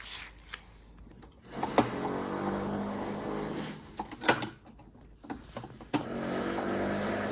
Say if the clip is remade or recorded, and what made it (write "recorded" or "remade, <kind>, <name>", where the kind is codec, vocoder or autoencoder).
recorded